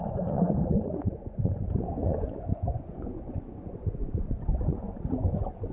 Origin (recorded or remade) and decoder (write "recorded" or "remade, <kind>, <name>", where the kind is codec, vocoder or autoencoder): remade, vocoder, Vocos